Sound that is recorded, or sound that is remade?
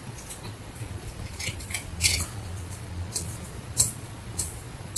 remade